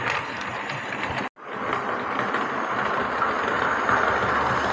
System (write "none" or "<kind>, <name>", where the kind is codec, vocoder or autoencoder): none